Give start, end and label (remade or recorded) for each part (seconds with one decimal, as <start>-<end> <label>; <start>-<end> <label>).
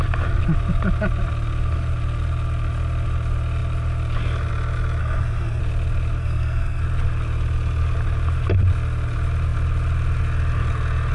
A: 0.0-5.0 recorded; 5.0-5.6 remade; 5.6-6.2 recorded; 6.2-6.8 remade; 6.8-11.1 recorded